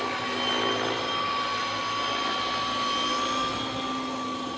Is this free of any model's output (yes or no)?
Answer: yes